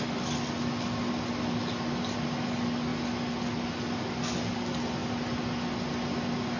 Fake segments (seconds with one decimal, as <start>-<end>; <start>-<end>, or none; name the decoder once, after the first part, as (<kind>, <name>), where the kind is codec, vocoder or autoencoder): none